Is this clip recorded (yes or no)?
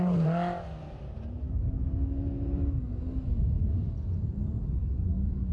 yes